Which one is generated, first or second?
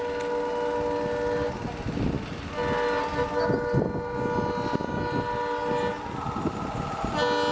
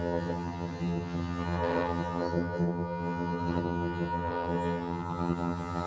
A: second